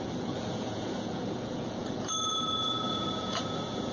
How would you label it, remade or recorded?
remade